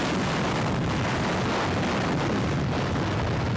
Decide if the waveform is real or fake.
real